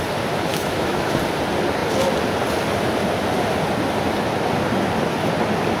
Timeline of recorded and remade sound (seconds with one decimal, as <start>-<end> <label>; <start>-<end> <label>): 0.0-0.5 recorded; 0.5-1.1 remade; 1.1-5.8 recorded